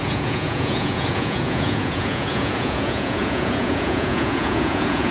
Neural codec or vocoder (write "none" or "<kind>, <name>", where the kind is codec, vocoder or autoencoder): vocoder, Vocos